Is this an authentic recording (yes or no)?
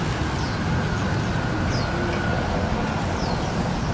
yes